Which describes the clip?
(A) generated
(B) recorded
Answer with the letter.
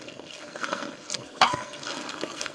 A